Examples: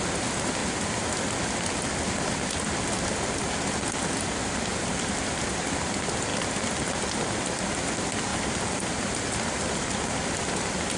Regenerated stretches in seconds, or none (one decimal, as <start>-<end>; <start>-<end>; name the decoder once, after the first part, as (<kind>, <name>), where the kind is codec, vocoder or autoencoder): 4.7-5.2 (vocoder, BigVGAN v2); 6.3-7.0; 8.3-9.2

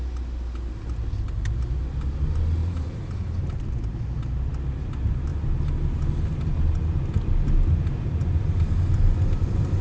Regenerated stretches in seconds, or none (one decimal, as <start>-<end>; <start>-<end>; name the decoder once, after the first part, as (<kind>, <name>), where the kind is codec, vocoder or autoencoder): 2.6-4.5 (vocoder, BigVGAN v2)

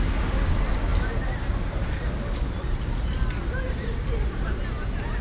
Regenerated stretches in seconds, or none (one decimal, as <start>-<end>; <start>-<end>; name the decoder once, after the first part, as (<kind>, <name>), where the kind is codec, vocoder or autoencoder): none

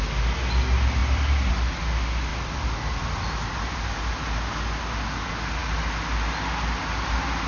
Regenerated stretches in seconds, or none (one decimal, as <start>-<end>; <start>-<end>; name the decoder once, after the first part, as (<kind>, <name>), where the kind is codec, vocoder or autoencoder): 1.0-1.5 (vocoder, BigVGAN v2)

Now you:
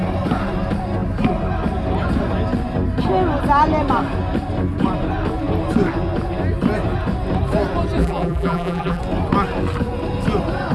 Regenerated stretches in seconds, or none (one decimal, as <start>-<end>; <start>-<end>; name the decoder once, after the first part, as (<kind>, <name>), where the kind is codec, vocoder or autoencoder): 8.0-9.0 (vocoder, BigVGAN v2)

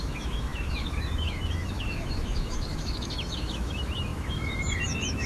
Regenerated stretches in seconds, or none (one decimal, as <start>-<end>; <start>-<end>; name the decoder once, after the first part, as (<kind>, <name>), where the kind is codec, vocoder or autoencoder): 0.0-5.3 (autoencoder, DAC-VAE)

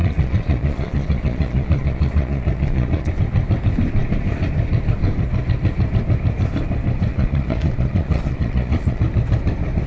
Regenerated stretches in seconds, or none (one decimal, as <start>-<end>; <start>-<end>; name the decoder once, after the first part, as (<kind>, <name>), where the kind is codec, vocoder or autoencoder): 0.0-3.1 (vocoder, Vocos); 7.1-9.0

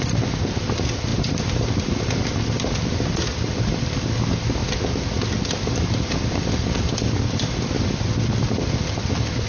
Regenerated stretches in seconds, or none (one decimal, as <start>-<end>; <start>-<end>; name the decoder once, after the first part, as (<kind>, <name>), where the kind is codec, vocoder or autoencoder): none